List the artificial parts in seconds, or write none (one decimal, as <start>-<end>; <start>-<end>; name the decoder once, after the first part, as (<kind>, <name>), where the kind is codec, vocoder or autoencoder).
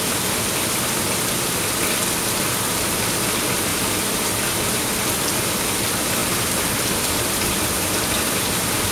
none